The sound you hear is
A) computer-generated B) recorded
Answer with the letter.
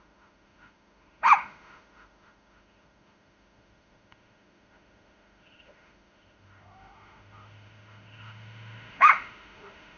A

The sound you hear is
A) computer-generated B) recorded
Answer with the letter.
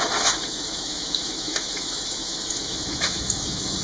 A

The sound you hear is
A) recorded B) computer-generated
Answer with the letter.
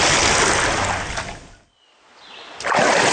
A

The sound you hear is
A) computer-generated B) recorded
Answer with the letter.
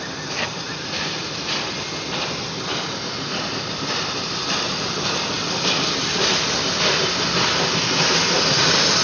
B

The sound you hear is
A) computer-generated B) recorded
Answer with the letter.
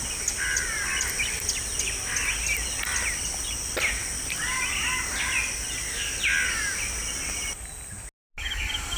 B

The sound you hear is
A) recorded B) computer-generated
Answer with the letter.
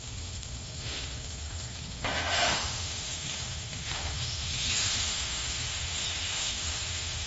B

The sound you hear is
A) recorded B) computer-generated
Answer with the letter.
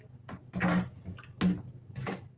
A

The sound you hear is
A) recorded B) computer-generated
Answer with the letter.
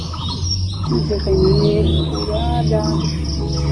A